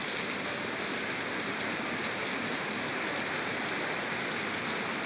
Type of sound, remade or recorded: recorded